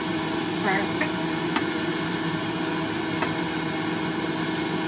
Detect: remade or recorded recorded